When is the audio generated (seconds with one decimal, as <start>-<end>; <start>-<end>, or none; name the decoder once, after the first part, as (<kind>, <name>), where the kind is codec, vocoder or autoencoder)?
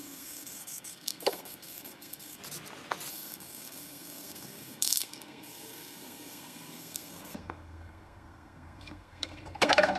0.0-2.4 (codec, SNAC); 3.1-10.0